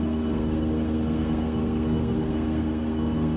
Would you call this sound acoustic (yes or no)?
no